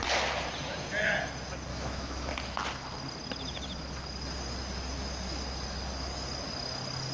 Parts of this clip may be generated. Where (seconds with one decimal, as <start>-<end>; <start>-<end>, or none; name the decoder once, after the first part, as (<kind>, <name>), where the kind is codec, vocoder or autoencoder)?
1.7-2.3 (autoencoder, DAC-VAE)

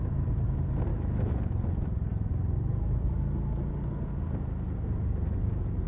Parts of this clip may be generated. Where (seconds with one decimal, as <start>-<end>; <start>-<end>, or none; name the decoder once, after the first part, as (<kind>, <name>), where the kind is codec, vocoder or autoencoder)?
0.9-1.4 (autoencoder, DAC-VAE)

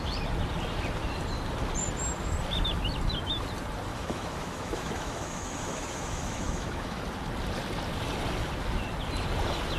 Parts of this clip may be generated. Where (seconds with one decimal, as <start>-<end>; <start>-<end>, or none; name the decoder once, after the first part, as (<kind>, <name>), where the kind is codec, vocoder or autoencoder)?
3.9-7.0 (autoencoder, DAC-VAE)